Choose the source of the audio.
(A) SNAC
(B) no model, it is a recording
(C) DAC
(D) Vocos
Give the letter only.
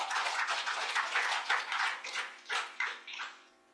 D